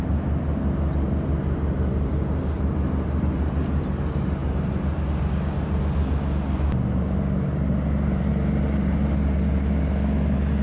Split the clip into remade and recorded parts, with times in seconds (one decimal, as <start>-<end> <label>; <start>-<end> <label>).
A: 0.0-10.6 recorded